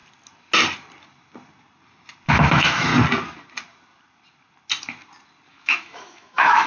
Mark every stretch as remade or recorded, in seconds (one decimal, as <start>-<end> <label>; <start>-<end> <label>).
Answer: 0.0-2.3 recorded; 2.3-2.9 remade; 2.9-5.5 recorded; 5.5-6.7 remade